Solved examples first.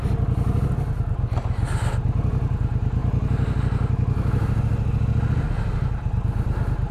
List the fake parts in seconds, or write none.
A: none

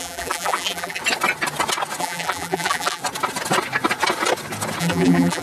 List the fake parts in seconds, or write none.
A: 0.0-1.0; 2.0-3.0; 4.8-5.4

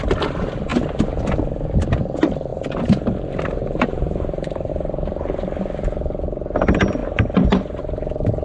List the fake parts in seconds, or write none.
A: 2.5-4.7; 7.0-7.8

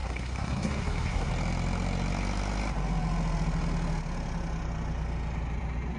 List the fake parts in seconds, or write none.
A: 0.0-1.3

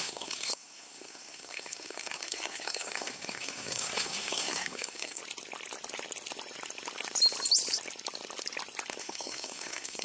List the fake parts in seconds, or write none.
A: 0.0-5.2; 9.0-10.0